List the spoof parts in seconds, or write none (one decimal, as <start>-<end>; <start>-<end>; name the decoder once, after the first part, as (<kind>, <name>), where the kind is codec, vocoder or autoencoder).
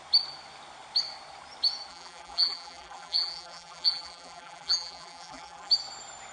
1.9-5.7 (vocoder, BigVGAN v2)